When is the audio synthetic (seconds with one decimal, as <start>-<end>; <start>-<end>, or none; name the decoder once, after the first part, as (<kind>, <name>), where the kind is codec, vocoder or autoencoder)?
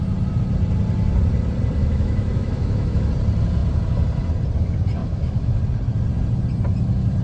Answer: 1.8-3.1 (autoencoder, DAC-VAE); 5.0-5.6